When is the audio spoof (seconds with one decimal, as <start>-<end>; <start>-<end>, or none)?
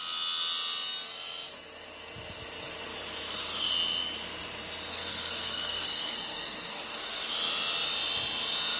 4.9-7.3